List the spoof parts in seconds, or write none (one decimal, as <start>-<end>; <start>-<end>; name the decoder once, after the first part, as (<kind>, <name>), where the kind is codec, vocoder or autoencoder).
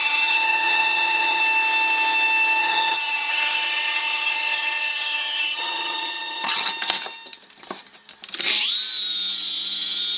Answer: 0.0-1.4 (vocoder, HiFi-GAN); 2.6-6.7